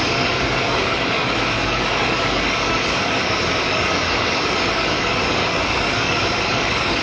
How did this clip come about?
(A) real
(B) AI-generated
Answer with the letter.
B